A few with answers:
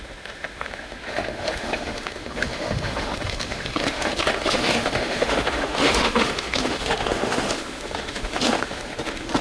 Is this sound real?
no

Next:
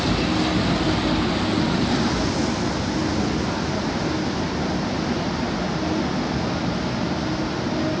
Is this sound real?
yes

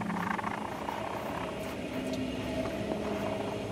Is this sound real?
yes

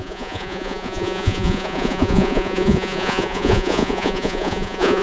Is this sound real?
no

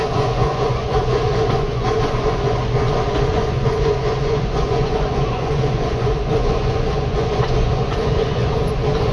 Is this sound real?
no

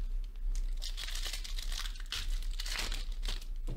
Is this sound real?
yes